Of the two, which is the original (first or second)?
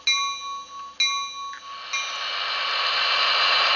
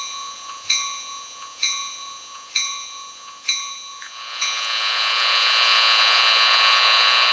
first